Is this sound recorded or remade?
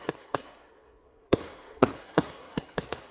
remade